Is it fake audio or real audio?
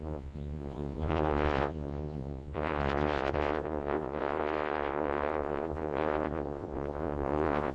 fake